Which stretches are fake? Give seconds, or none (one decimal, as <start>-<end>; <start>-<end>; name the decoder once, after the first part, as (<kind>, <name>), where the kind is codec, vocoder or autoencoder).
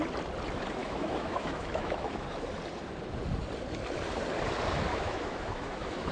0.8-2.1 (autoencoder, DAC-VAE); 4.9-6.1